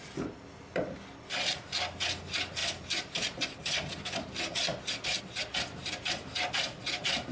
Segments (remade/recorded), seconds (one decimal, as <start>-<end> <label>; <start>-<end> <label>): 0.0-7.3 recorded